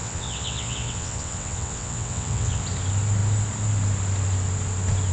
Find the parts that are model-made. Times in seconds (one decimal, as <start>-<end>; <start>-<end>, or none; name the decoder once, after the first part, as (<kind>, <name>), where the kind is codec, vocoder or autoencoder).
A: 0.0-2.6 (vocoder, WaveNeXt)